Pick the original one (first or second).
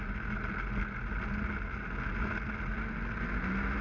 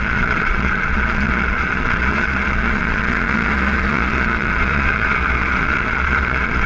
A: first